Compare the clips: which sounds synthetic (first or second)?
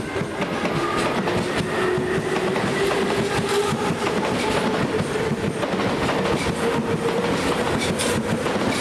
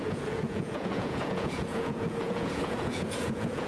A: second